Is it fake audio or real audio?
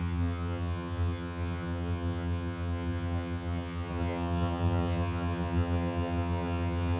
fake